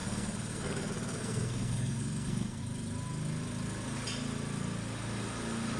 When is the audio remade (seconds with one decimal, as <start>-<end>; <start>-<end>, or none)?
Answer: 0.0-2.6